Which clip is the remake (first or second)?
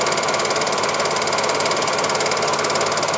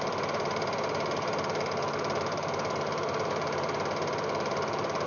second